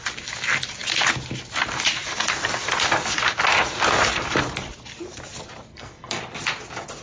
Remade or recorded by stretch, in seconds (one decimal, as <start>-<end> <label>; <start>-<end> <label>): 0.0-5.7 recorded; 5.7-6.2 remade; 6.2-7.0 recorded